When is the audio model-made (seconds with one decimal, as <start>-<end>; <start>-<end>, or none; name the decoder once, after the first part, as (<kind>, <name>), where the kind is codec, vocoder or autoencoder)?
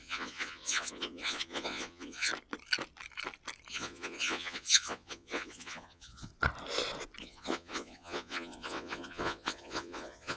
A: 0.0-2.3 (vocoder, Vocos); 3.7-6.3; 7.2-10.4